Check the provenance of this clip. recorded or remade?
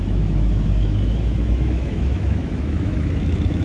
remade